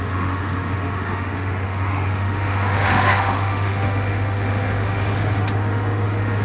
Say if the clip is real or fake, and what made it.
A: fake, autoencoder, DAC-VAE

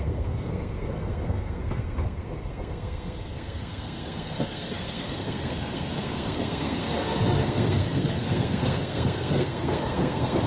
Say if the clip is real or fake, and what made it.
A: fake, codec, SNAC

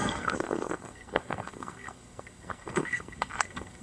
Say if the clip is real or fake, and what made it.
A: fake, codec, SNAC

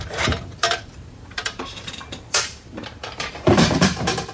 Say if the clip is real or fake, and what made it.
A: fake, vocoder, BigVGAN v2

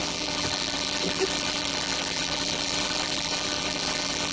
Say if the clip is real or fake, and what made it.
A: fake, vocoder, BigVGAN v2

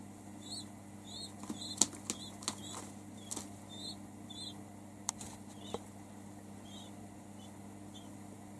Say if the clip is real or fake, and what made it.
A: real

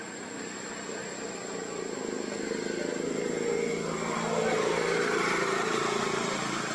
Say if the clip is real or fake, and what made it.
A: real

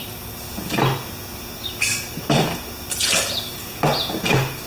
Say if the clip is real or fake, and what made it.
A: real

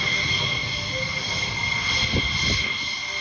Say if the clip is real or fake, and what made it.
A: real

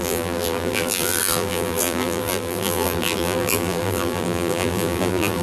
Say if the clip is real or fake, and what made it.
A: fake, vocoder, BigVGAN v2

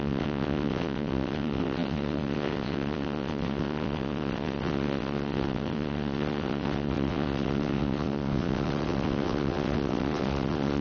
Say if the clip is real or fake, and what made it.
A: fake, vocoder, WaveNeXt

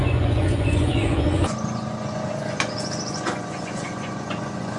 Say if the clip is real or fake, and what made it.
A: fake, vocoder, Vocos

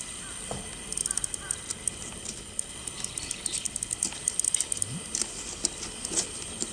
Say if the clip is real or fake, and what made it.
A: real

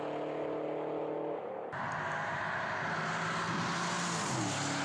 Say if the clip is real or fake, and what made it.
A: real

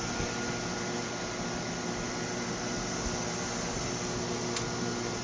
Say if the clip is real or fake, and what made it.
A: real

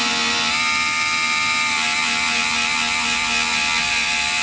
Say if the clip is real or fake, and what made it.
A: real